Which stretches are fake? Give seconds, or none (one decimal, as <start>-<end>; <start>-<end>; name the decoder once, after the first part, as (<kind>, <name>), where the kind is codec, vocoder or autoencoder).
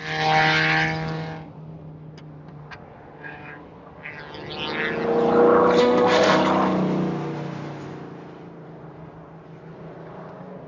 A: 5.8-6.4 (autoencoder, DAC-VAE)